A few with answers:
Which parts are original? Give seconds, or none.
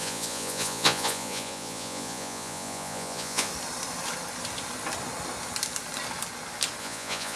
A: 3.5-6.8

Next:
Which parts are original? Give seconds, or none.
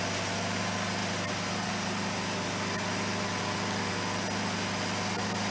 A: 0.0-5.5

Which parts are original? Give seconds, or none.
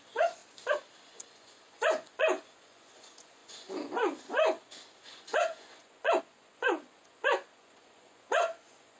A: 0.4-1.0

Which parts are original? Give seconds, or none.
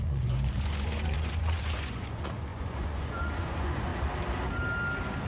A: 3.9-5.3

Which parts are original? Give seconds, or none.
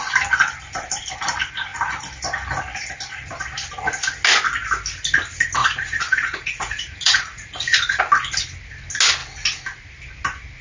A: 0.0-5.6; 8.0-10.6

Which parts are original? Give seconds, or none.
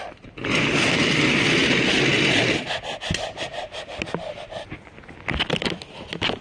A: 0.0-6.4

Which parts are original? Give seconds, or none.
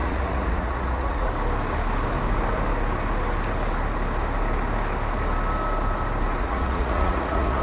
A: 1.3-6.4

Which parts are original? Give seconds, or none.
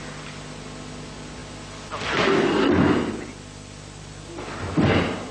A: 0.0-5.3